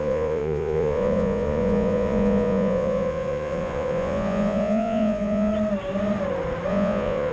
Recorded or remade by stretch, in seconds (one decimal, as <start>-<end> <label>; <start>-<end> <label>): 0.0-5.5 remade; 5.5-6.7 recorded; 6.7-7.3 remade